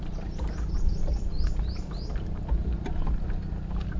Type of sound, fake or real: real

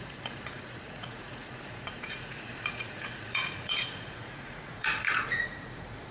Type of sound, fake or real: fake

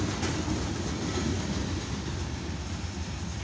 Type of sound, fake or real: real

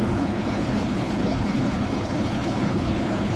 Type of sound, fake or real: fake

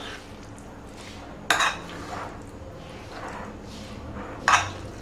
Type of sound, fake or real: real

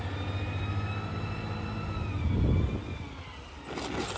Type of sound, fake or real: real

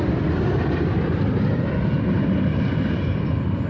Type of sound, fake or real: real